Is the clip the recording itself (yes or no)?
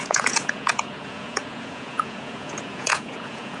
no